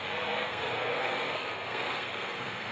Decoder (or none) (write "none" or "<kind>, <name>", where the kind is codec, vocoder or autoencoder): codec, SNAC